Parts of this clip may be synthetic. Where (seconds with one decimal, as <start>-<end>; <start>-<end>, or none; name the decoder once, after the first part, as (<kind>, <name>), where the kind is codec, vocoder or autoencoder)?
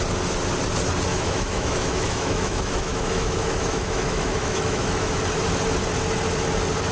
1.1-5.2 (autoencoder, DAC-VAE)